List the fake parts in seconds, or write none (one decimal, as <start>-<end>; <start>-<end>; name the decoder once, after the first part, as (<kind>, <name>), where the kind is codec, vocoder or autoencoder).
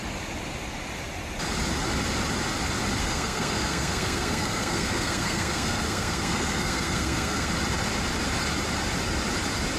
3.0-7.5 (codec, SNAC)